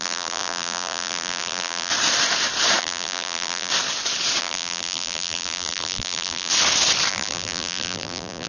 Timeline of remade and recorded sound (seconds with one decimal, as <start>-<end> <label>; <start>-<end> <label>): 0.0-1.9 remade; 1.9-2.8 recorded; 2.8-3.7 remade; 3.7-4.4 recorded; 4.4-6.5 remade; 6.5-7.1 recorded; 7.1-8.5 remade